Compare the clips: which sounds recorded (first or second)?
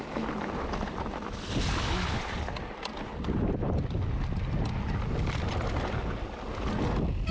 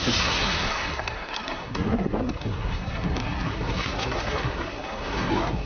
first